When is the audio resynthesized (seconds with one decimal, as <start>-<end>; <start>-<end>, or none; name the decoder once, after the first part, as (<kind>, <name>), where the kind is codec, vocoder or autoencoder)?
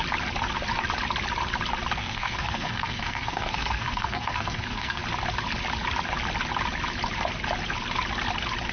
2.0-5.0 (codec, SNAC)